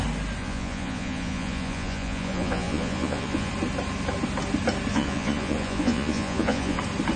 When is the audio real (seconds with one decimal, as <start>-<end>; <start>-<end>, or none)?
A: 0.0-0.4; 3.5-4.9; 6.8-7.2